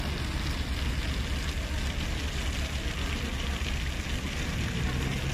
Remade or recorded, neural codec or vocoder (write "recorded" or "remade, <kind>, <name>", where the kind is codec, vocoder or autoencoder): recorded